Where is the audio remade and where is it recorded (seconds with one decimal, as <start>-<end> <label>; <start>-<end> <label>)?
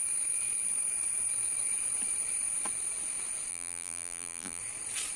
0.0-3.5 recorded; 3.5-4.6 remade; 4.6-5.2 recorded